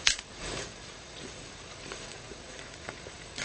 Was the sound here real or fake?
fake